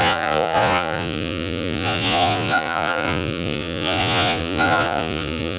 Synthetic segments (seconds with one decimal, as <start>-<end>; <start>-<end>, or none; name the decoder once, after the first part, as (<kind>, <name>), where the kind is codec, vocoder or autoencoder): 0.0-5.6 (vocoder, Vocos)